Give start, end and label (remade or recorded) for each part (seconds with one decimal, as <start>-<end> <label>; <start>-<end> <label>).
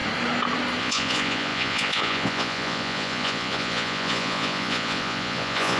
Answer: 0.0-0.8 recorded; 0.8-5.8 remade